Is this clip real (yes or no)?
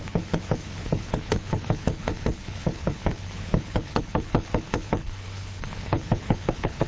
no